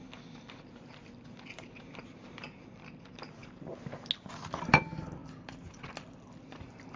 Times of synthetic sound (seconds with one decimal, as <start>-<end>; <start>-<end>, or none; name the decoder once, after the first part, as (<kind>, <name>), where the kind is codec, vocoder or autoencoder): none